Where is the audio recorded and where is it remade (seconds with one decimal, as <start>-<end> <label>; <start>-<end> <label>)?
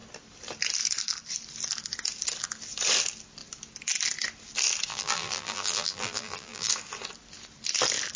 0.0-4.9 recorded; 4.9-6.7 remade; 6.7-8.2 recorded